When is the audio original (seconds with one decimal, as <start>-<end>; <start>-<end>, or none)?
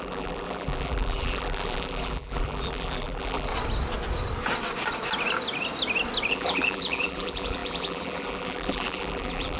3.5-6.3